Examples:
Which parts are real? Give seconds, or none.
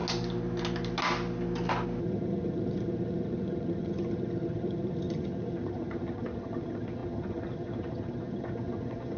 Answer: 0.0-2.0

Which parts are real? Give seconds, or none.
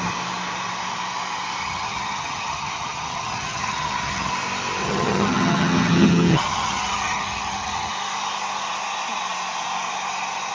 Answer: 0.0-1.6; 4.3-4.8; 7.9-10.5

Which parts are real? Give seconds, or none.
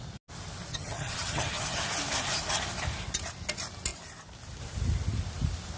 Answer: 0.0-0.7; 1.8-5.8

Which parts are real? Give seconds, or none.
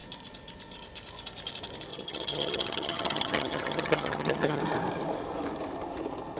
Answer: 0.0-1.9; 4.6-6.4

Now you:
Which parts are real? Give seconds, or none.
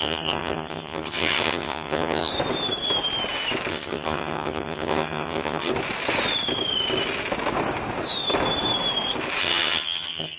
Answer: 2.3-3.7; 5.7-9.4